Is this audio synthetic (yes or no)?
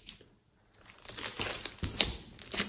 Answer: no